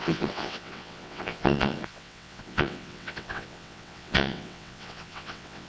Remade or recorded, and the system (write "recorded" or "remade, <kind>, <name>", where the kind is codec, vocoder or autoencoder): remade, vocoder, WaveNeXt